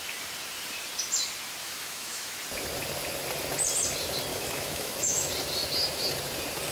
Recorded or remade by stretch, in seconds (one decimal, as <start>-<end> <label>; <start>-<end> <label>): 0.0-1.6 recorded; 1.6-2.4 remade; 2.4-4.3 recorded; 4.3-5.3 remade; 5.3-6.7 recorded